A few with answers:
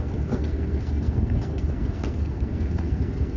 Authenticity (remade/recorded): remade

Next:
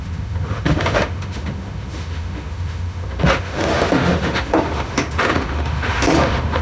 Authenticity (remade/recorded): remade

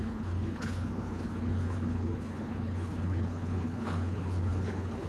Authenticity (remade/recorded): remade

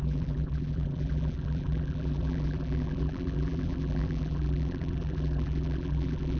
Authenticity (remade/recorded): remade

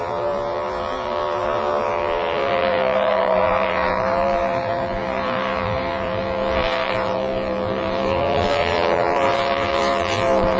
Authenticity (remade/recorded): remade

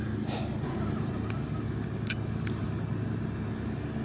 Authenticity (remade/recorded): recorded